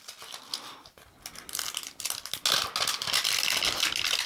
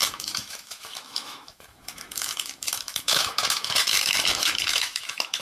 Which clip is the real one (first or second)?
first